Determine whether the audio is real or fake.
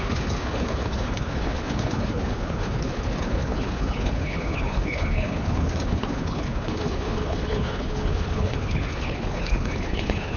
fake